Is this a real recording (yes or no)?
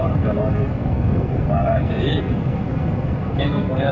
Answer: no